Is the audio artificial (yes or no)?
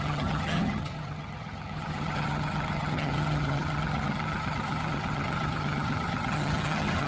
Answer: yes